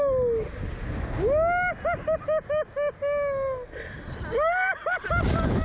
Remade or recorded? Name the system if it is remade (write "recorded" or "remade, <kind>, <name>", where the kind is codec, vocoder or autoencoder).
recorded